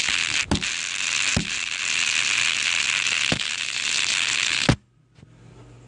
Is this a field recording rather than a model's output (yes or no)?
yes